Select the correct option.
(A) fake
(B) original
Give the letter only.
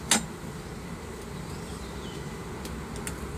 B